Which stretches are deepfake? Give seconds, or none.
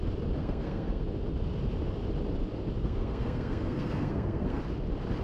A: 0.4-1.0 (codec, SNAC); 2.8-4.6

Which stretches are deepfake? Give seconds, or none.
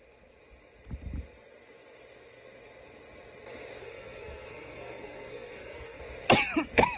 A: 3.8-6.0 (codec, SNAC)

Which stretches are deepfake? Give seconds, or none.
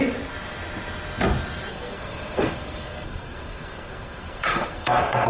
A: 1.7-5.3 (codec, SNAC)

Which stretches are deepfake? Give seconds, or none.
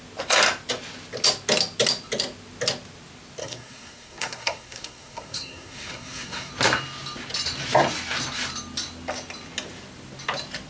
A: 3.4-6.5 (codec, SNAC)